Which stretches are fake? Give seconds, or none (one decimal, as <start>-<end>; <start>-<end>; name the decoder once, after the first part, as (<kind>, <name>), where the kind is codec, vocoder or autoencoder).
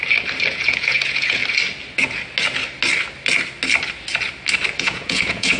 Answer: 0.5-1.4 (vocoder, Vocos); 4.8-5.6